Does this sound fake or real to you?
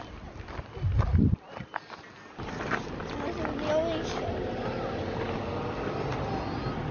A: real